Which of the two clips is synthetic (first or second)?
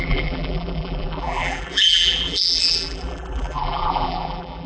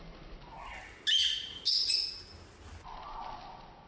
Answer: first